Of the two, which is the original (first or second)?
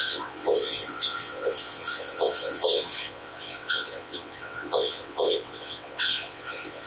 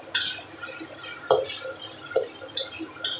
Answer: second